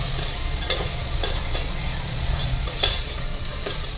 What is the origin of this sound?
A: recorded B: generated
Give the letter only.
B